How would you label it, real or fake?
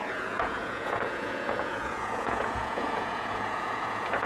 fake